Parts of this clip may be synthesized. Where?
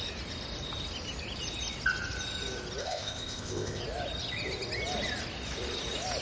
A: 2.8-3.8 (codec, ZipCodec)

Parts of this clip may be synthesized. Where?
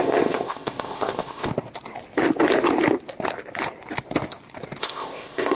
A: 0.0-1.5 (codec, ZipCodec); 4.8-5.5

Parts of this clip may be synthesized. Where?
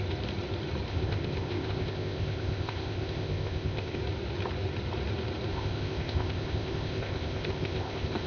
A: 0.9-4.0 (codec, ZipCodec); 5.5-8.3